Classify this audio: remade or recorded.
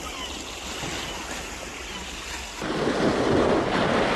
recorded